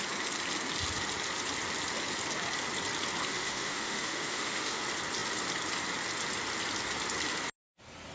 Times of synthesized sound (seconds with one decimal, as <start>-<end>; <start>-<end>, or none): 3.3-4.8